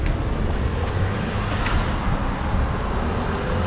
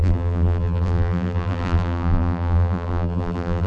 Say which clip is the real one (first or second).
first